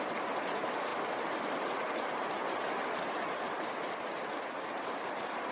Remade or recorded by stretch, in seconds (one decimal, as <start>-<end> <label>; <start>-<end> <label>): 0.0-5.5 recorded

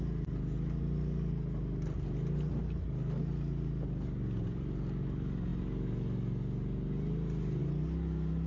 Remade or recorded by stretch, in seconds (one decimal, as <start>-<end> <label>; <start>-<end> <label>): 0.0-8.5 recorded

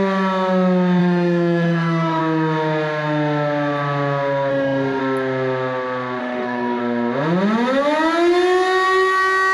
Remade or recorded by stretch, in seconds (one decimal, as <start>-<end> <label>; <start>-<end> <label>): 0.0-1.0 recorded; 1.0-2.2 remade; 2.2-4.5 recorded; 4.5-5.0 remade; 5.0-6.2 recorded; 6.2-6.8 remade; 6.8-9.5 recorded

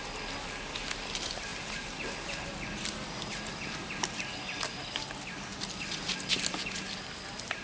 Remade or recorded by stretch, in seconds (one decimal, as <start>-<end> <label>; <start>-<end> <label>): 0.0-7.6 recorded

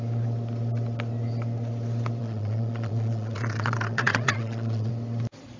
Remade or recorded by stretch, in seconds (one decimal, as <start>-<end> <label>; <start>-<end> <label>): 0.0-2.2 recorded; 2.2-4.9 remade; 4.9-5.6 recorded

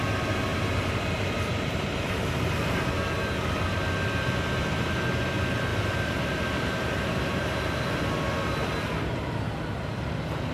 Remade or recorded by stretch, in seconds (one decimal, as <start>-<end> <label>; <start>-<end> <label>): 0.0-0.5 recorded; 0.5-2.9 remade; 2.9-5.7 recorded; 5.7-8.0 remade; 8.0-10.5 recorded